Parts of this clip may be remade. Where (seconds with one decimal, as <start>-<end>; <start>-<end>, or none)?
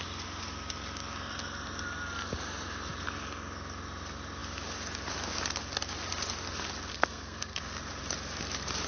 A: 6.9-7.6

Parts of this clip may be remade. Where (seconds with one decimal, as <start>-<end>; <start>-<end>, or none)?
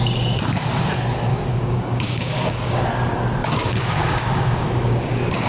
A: 1.3-2.8; 3.4-5.5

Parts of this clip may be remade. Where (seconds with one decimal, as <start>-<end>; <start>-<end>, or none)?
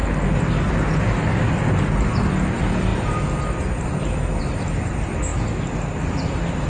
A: none